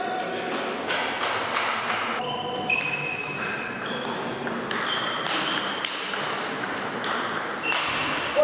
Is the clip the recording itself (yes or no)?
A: yes